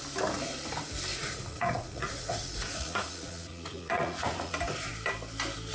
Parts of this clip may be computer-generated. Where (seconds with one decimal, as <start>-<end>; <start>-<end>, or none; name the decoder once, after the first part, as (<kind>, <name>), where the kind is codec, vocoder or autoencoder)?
1.1-4.5 (vocoder, Vocos)